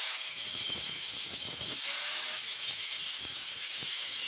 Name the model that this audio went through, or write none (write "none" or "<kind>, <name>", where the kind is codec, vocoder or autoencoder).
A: autoencoder, DAC-VAE